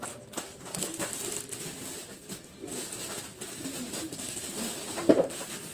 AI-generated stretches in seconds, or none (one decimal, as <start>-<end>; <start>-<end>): none